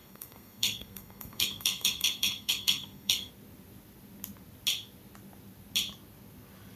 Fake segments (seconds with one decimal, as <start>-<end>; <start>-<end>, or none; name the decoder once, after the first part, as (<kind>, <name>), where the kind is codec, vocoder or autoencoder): 0.0-3.3 (codec, SNAC)